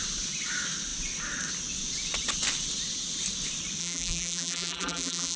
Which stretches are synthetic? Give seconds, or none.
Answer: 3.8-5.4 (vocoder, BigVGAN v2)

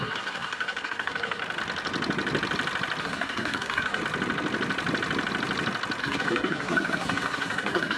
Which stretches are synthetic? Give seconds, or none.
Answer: 0.0-1.4 (codec, SNAC); 3.0-4.0; 6.0-8.0